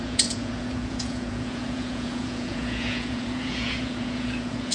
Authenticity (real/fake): fake